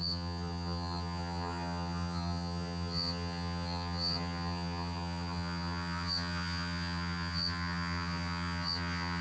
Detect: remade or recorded remade